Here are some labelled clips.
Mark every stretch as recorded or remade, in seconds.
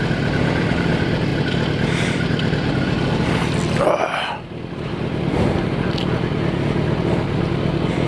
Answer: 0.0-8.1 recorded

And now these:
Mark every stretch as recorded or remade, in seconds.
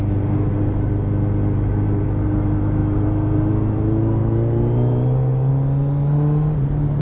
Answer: 0.0-7.0 recorded